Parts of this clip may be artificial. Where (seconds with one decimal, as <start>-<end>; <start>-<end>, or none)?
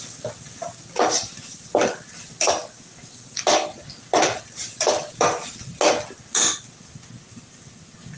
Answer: none